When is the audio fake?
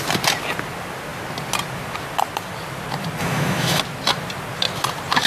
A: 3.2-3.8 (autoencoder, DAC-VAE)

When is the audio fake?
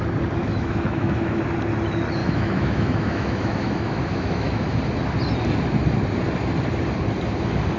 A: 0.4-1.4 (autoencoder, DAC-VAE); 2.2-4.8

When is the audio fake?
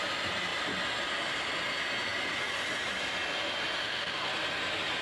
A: 3.8-4.3 (autoencoder, DAC-VAE)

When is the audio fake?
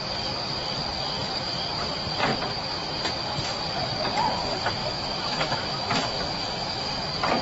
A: 4.8-6.9 (autoencoder, DAC-VAE)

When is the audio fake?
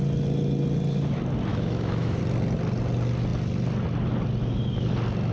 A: 1.5-2.2 (autoencoder, DAC-VAE)